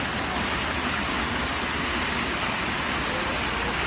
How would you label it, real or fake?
real